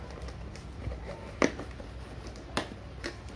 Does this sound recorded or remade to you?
recorded